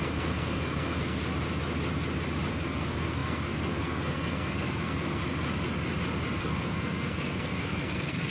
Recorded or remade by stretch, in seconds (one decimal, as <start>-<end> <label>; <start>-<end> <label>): 0.0-1.2 remade; 1.2-2.5 recorded; 2.5-5.2 remade; 5.2-6.4 recorded; 6.4-8.3 remade